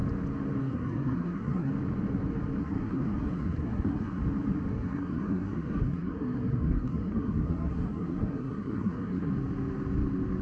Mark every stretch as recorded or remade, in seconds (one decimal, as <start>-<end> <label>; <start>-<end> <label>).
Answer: 0.0-0.6 recorded; 0.6-1.7 remade; 1.7-2.6 recorded; 2.6-4.2 remade; 4.2-4.7 recorded; 4.7-9.3 remade; 9.3-10.4 recorded